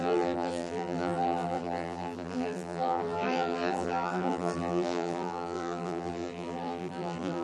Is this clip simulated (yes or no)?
yes